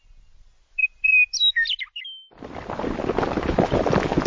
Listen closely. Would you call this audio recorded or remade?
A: recorded